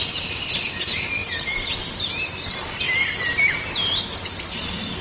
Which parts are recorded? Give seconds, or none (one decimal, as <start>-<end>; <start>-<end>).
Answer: 1.2-4.2